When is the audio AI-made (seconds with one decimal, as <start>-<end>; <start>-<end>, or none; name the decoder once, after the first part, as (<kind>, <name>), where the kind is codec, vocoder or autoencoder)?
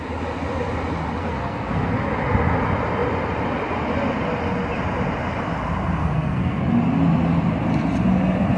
1.2-2.0 (codec, SNAC); 6.0-6.6